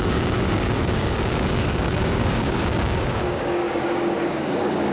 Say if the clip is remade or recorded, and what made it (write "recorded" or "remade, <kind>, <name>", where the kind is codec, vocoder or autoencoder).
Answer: remade, codec, DAC